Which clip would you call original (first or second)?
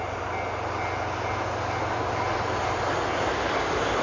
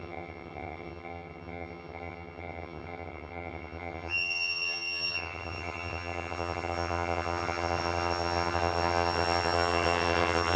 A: first